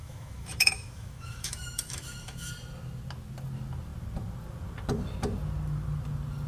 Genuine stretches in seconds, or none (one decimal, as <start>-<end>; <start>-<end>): 2.5-6.5